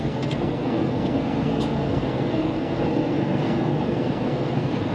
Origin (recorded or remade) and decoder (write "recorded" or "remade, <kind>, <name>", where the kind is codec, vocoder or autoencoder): remade, codec, SNAC